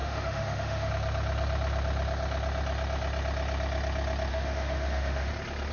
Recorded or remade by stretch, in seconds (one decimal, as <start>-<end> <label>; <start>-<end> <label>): 0.0-0.9 remade; 0.9-4.3 recorded; 4.3-5.3 remade; 5.3-5.7 recorded